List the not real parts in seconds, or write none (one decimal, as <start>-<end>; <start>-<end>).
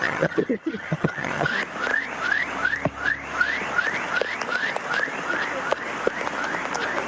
0.0-1.5